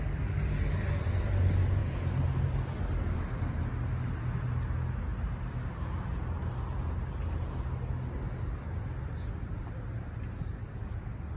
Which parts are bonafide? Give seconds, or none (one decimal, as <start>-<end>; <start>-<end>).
0.0-11.4

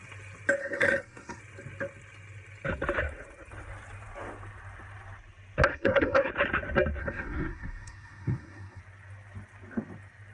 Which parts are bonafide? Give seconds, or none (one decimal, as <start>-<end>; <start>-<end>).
0.0-0.6; 1.4-5.7; 6.3-7.0; 8.8-10.3

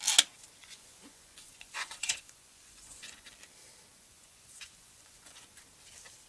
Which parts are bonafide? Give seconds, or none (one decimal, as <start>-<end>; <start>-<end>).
0.0-0.6; 3.3-3.9; 5.6-6.3

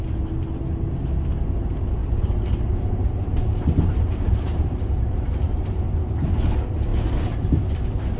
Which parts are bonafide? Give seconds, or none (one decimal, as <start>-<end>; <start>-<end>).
0.0-2.0; 6.4-8.2

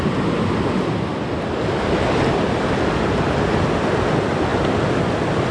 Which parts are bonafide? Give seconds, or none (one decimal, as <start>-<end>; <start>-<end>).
0.0-5.5

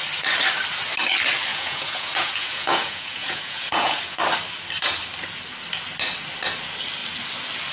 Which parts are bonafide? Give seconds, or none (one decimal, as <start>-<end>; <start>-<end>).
0.0-1.5; 4.2-7.7

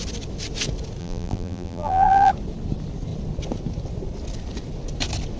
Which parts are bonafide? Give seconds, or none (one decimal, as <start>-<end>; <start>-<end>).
0.0-1.0; 2.3-5.4